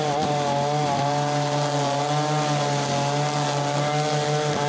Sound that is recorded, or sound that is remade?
recorded